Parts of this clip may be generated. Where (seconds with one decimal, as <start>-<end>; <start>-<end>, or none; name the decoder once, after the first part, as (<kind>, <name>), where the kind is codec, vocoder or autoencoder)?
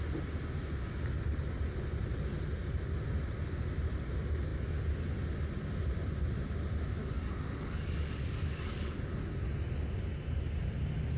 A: 7.0-9.3 (codec, DAC)